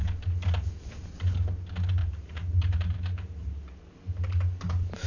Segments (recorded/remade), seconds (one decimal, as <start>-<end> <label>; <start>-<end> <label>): 0.0-2.0 recorded; 2.0-3.9 remade; 3.9-5.1 recorded

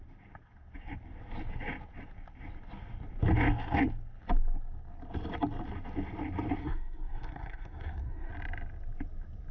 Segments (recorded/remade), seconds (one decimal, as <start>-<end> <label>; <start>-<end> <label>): 0.0-6.6 recorded; 6.6-8.3 remade; 8.3-9.5 recorded

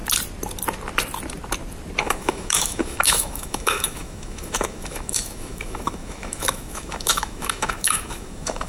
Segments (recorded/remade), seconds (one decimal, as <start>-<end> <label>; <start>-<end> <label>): 0.0-2.0 recorded; 2.0-8.7 remade